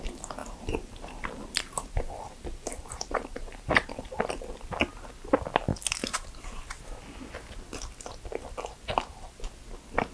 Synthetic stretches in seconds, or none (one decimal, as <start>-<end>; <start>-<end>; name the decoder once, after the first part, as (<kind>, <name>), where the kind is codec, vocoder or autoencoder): 0.4-4.1 (vocoder, BigVGAN v2)